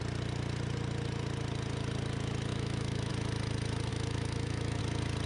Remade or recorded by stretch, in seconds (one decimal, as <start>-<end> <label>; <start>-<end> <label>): 0.0-2.5 recorded; 2.5-3.1 remade; 3.1-3.9 recorded; 3.9-4.8 remade; 4.8-5.3 recorded